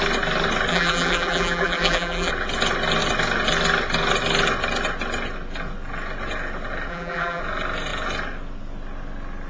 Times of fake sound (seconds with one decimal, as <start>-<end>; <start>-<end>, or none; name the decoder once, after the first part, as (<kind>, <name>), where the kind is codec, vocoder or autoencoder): 0.7-2.3 (vocoder, BigVGAN v2); 6.9-7.4